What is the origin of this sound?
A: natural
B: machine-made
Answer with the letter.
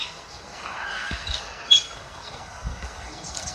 B